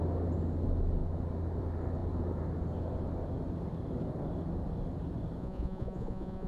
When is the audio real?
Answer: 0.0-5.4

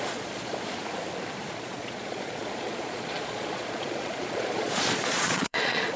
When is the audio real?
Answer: 0.5-1.5

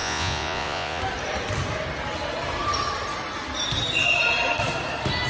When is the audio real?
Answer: 1.0-5.3

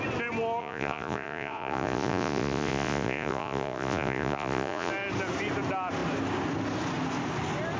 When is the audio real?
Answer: 0.0-0.6; 4.9-7.8

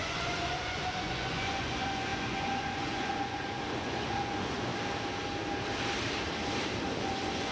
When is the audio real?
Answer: 4.7-7.0

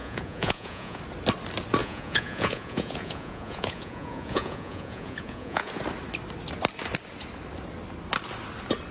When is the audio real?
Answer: 1.0-1.8; 5.7-8.9

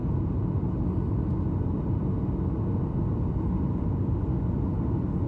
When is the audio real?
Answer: 0.0-5.3